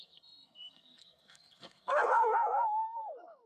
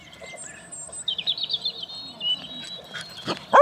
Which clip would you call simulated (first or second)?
first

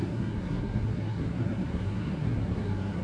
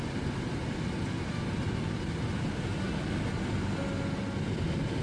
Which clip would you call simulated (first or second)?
first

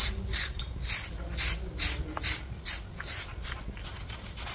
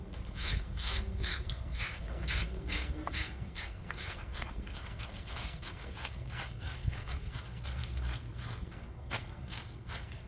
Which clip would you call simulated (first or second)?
second